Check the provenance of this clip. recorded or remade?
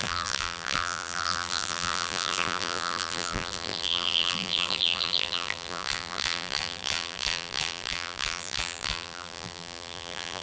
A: remade